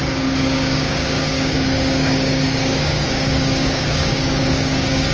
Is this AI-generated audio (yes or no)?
yes